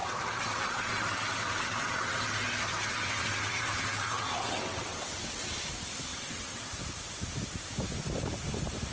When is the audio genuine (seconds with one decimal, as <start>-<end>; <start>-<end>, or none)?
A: 2.2-2.9; 5.5-6.1; 6.6-8.9